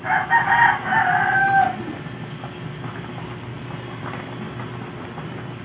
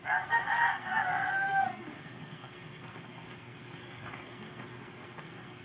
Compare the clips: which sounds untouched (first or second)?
first